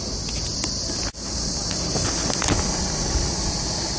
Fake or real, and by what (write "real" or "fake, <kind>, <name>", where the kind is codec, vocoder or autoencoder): real